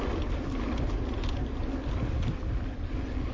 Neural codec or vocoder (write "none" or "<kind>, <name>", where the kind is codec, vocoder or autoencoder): none